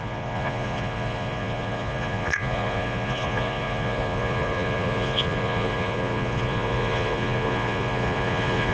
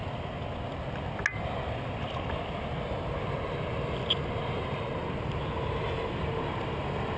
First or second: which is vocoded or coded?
first